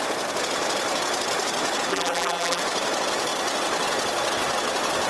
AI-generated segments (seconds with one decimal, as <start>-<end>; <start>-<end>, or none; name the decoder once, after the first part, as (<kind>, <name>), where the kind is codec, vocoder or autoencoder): 1.9-2.6 (vocoder, BigVGAN v2)